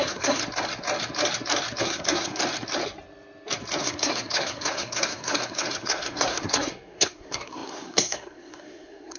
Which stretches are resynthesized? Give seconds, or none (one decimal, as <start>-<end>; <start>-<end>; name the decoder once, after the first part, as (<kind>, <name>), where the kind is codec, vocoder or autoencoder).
0.0-0.4 (codec, SNAC); 1.8-2.4; 3.8-9.2